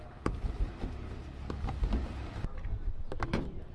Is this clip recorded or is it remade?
recorded